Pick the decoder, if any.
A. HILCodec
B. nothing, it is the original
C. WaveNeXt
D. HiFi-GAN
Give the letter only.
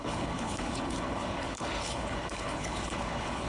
A